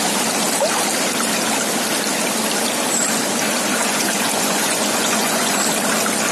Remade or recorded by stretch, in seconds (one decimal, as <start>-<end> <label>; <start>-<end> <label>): 0.0-3.8 recorded; 3.8-5.6 remade; 5.6-6.3 recorded